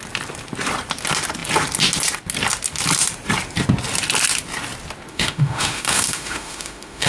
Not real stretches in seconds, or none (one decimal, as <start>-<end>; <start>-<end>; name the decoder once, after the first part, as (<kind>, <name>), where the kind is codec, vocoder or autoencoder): 5.1-7.1 (autoencoder, DAC-VAE)